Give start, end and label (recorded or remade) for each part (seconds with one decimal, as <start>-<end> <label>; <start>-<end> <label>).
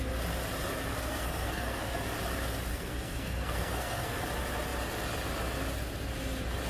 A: 0.0-0.9 recorded; 0.9-2.0 remade; 2.0-2.7 recorded; 2.7-4.2 remade; 4.2-6.7 recorded